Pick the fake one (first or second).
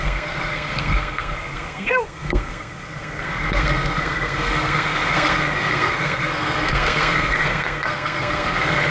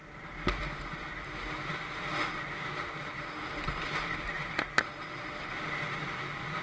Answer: first